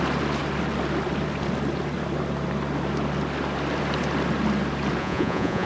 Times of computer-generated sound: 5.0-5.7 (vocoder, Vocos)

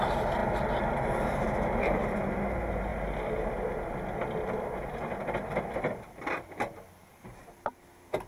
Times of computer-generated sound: 0.0-0.4 (vocoder, BigVGAN v2); 1.1-2.9; 7.1-8.3

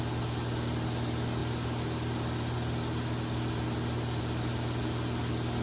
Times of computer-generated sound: none

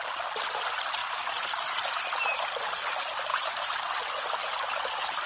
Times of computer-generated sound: 1.0-1.7 (vocoder, BigVGAN v2); 3.3-3.8

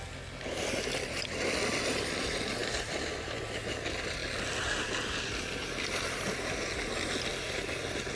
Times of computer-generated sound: none